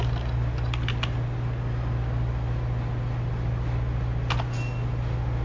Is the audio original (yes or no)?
yes